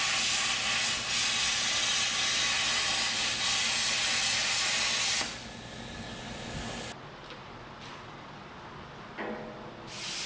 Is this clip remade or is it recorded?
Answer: recorded